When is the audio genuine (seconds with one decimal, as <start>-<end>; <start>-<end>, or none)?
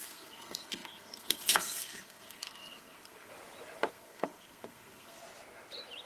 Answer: 3.3-3.9; 5.2-6.1